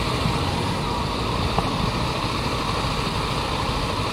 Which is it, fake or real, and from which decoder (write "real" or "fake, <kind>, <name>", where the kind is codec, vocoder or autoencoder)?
real